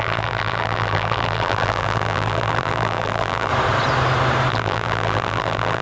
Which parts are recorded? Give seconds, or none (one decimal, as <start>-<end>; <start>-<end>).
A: 3.5-4.5